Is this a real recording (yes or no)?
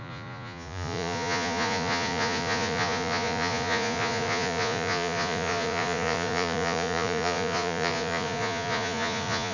no